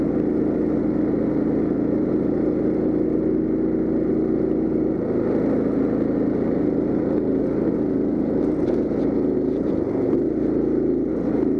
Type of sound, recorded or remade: recorded